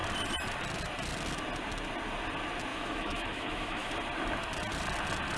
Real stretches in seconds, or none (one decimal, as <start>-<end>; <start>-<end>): 0.0-2.7; 3.9-5.4